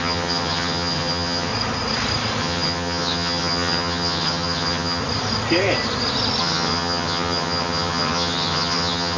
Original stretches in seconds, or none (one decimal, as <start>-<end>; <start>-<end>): 1.5-2.4; 5.0-6.4